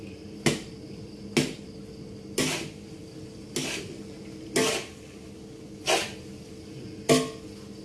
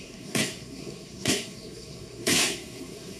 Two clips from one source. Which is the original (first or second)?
first